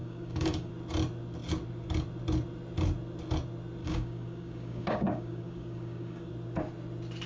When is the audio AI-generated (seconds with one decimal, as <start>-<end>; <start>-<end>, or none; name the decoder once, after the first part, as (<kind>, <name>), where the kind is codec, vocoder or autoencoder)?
0.0-0.7 (codec, DAC); 3.8-6.3